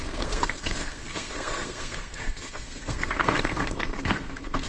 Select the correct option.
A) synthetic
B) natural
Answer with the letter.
A